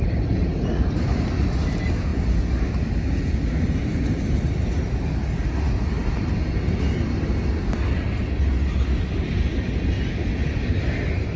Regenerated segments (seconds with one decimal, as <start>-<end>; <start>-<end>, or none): none